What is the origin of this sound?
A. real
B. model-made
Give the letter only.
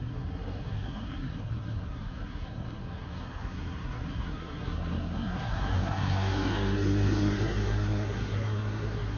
B